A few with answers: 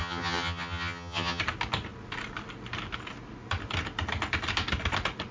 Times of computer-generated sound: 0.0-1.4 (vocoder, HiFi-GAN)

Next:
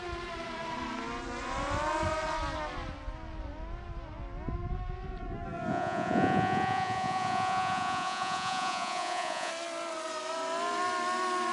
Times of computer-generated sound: 5.7-9.5 (vocoder, Vocos)

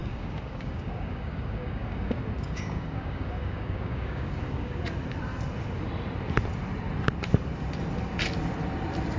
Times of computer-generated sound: 0.0-4.8 (codec, DAC)

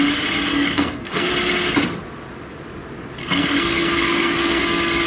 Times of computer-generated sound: 0.5-1.3 (codec, SNAC); 3.2-4.6

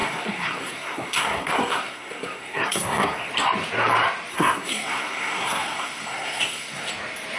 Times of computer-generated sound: 0.0-3.3 (codec, SNAC); 4.3-6.9

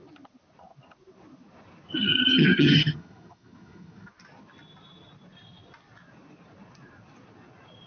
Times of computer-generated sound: 2.0-4.1 (vocoder, HiFi-GAN)

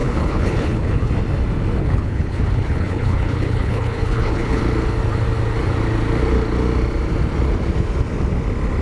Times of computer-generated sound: 0.0-1.1 (codec, HILCodec); 1.8-4.6